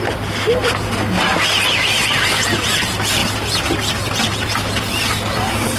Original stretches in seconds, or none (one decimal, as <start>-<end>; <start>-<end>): 0.0-5.8